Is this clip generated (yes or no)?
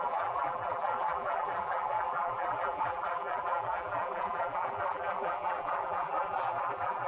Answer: yes